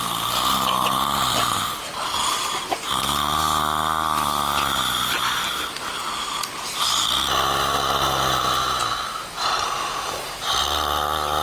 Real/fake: real